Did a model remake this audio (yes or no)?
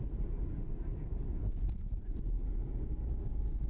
no